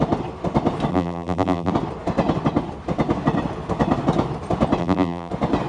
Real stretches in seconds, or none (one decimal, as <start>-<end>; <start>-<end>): 0.0-0.9; 1.7-4.8; 5.3-5.7